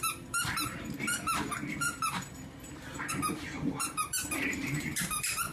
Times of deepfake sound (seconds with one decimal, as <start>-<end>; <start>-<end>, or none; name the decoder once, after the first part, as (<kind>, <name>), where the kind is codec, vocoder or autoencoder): 0.0-5.5 (vocoder, BigVGAN v2)